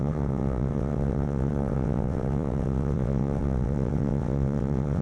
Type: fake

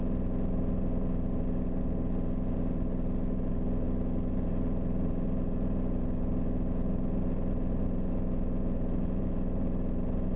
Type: real